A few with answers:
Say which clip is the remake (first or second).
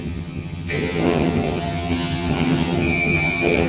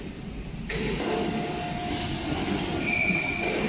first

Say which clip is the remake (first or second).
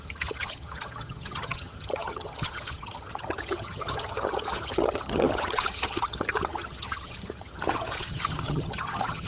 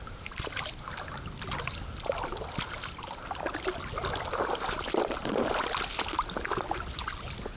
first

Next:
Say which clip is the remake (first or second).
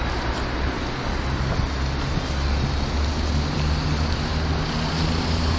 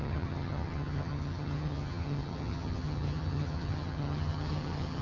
second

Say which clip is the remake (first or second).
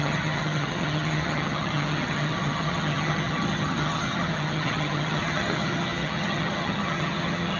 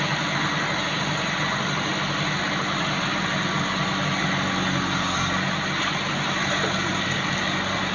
first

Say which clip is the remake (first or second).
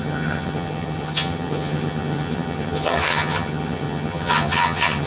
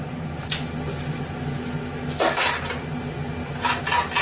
first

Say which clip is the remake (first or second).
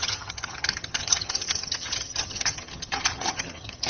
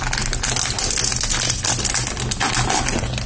first